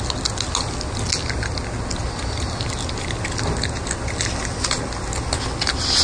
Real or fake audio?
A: real